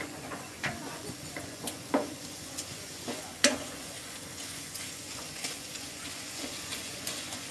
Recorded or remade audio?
remade